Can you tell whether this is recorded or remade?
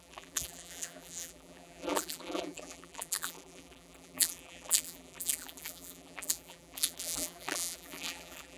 remade